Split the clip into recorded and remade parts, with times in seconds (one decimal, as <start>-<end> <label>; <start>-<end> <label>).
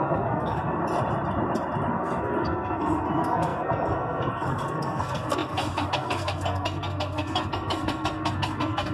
0.0-0.8 remade; 0.8-1.9 recorded; 1.9-8.9 remade